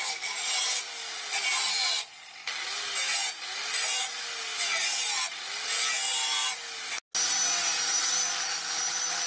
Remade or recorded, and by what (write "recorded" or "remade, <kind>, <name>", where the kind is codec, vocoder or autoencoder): recorded